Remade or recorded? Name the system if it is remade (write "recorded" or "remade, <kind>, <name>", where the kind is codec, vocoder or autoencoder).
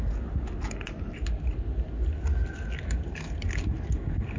recorded